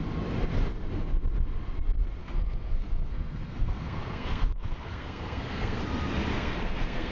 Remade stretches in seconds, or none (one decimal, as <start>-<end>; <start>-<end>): 2.2-5.8; 6.3-7.1